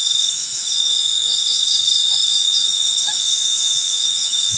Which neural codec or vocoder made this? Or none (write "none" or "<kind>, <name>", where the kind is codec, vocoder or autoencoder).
autoencoder, DAC-VAE